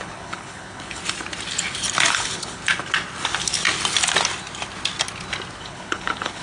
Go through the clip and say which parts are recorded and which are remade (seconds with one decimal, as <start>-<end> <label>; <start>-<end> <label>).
0.0-1.0 remade; 1.0-2.1 recorded; 2.1-2.6 remade; 2.6-5.6 recorded; 5.6-6.4 remade